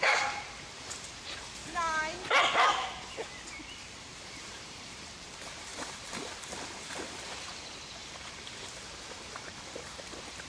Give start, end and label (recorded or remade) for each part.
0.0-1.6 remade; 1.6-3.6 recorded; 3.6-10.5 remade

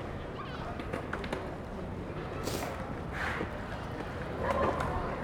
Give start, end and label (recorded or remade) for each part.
0.0-3.2 recorded; 3.2-4.5 remade; 4.5-5.2 recorded

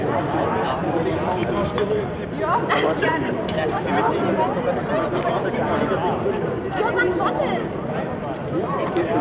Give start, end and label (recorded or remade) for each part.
0.0-0.8 remade; 0.8-2.5 recorded; 2.5-9.2 remade

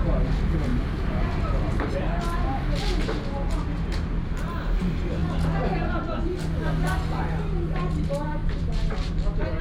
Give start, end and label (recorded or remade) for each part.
0.0-8.4 recorded; 8.4-9.1 remade; 9.1-9.6 recorded

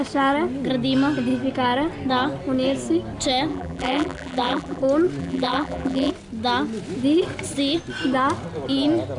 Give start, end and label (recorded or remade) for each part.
0.0-3.5 recorded; 3.5-4.8 remade; 4.8-5.2 recorded; 5.2-6.1 remade; 6.1-9.2 recorded

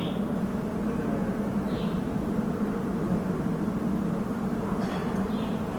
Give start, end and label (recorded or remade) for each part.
0.0-1.2 recorded; 1.2-3.1 remade; 3.1-4.5 recorded; 4.5-5.8 remade

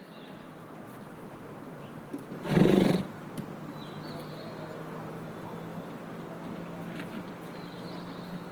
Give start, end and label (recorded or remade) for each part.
0.0-8.5 recorded

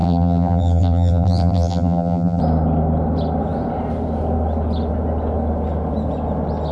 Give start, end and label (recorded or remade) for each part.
0.0-2.4 remade; 2.4-6.7 recorded